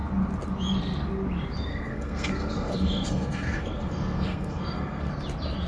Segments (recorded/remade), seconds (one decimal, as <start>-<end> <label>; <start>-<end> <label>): 0.0-1.7 recorded; 1.7-5.1 remade; 5.1-5.7 recorded